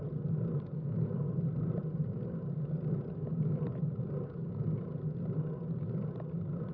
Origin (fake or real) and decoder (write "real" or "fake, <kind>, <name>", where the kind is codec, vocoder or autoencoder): real